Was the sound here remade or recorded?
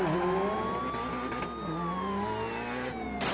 recorded